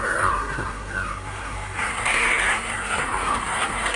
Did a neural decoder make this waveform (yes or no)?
yes